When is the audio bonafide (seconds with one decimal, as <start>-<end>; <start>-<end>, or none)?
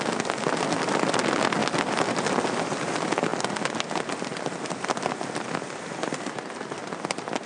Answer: 0.0-7.5